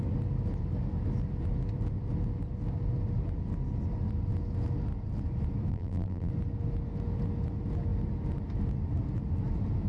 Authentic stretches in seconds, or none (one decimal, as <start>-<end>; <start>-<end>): 0.0-5.7; 6.3-9.9